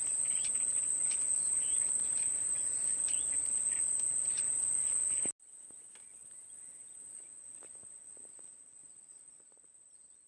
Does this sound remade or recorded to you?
recorded